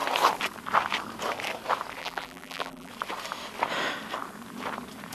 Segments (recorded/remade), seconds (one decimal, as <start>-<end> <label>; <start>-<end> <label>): 0.0-2.0 recorded; 2.0-2.9 remade; 2.9-5.1 recorded